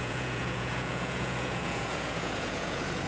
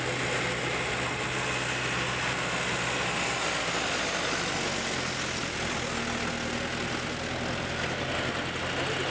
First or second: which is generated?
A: first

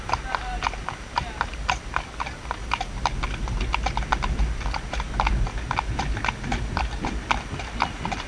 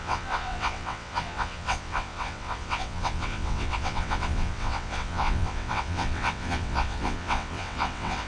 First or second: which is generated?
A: second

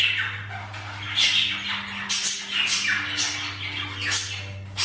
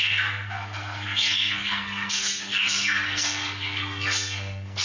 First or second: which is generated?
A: second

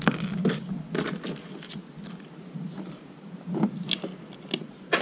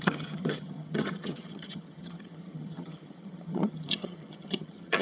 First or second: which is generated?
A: second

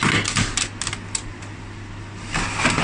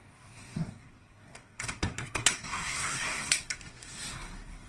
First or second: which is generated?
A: second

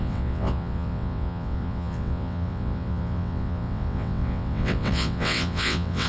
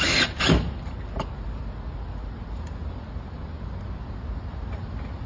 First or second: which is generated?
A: first